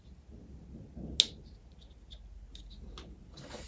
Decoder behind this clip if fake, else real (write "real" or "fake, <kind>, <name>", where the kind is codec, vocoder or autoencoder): real